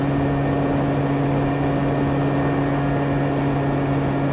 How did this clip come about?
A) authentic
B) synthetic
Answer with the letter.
A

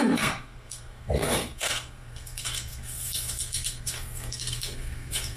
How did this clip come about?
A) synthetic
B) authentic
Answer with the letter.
A